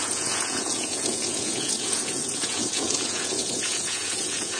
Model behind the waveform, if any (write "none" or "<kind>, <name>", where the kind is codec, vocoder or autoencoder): vocoder, Vocos